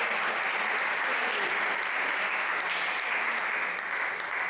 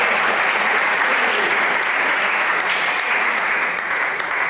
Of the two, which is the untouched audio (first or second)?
first